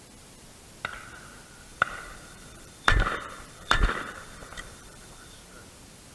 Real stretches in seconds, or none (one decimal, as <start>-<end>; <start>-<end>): 0.0-1.7; 5.4-6.1